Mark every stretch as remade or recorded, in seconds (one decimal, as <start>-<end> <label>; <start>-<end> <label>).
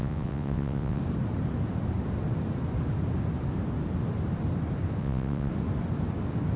0.0-1.0 remade; 1.0-5.0 recorded; 5.0-5.5 remade; 5.5-6.6 recorded